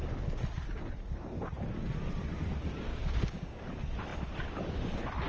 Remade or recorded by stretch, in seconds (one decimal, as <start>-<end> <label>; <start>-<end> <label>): 0.0-2.9 recorded; 2.9-3.6 remade; 3.6-5.3 recorded